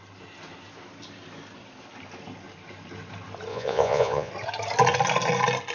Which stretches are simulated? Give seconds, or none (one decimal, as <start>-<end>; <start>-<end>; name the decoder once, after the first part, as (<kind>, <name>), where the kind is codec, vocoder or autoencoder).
3.5-4.3 (vocoder, Vocos)